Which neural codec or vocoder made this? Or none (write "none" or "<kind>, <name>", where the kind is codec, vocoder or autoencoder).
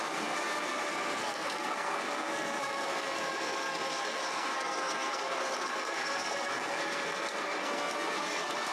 codec, SNAC